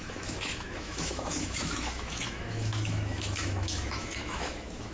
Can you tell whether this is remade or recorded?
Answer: remade